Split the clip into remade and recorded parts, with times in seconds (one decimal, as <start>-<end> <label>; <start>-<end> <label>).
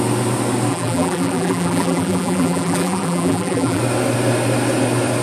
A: 0.0-0.7 recorded; 0.7-3.8 remade; 3.8-5.2 recorded